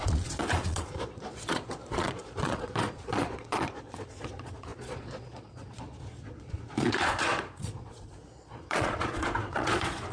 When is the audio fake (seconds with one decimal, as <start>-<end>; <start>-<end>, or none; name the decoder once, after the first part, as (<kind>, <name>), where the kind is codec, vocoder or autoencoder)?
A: 0.0-10.1 (vocoder, Vocos)